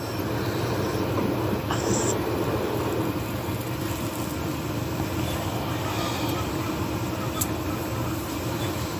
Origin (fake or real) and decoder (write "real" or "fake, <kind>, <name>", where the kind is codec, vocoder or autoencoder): real